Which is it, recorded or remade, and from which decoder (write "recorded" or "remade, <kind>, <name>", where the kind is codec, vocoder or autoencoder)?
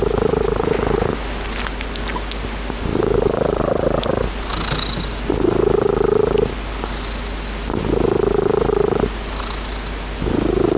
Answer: recorded